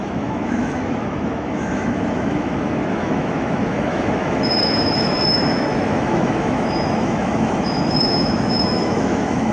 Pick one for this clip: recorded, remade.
remade